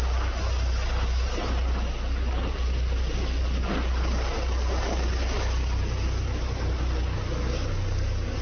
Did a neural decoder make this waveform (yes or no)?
no